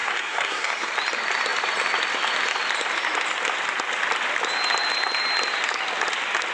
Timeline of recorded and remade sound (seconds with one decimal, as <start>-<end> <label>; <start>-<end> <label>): 0.0-0.9 remade; 0.9-6.5 recorded